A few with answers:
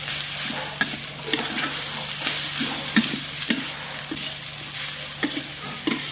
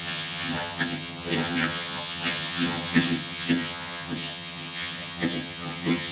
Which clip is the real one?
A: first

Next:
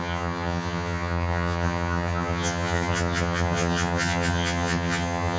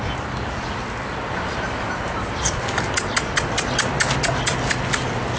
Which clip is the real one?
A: second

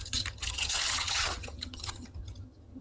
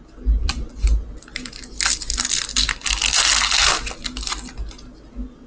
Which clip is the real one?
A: second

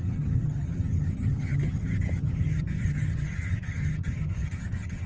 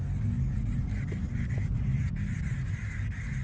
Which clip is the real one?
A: second